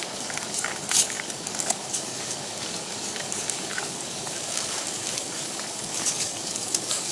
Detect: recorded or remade remade